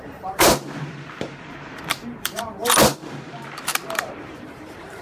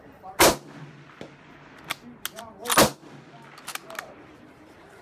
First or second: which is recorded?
second